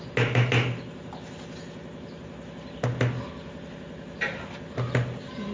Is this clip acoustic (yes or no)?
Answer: yes